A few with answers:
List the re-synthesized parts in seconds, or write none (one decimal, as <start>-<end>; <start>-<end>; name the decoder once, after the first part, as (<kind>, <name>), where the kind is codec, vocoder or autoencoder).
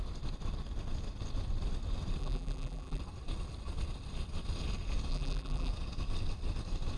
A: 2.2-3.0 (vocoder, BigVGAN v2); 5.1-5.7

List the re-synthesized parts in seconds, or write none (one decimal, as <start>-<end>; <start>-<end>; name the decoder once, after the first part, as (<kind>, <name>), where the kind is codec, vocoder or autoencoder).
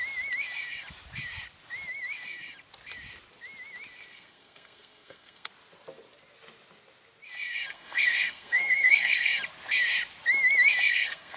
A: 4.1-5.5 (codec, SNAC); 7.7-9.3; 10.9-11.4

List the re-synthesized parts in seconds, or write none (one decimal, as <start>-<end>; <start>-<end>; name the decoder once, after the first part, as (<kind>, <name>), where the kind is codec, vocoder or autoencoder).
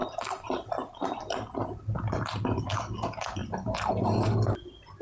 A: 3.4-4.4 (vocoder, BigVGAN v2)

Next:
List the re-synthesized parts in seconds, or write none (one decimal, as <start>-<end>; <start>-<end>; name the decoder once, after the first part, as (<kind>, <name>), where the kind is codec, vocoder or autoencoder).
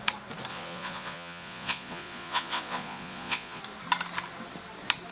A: 0.5-3.6 (vocoder, Vocos)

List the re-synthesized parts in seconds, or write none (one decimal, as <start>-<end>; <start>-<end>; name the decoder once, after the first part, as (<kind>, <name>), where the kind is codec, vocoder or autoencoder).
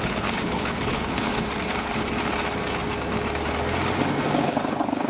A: 0.0-1.3 (codec, HILCodec); 4.4-5.1